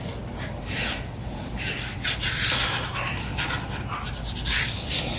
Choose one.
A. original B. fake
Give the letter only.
A